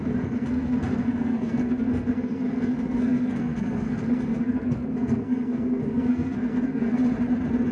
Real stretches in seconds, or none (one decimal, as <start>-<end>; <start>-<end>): 7.0-7.7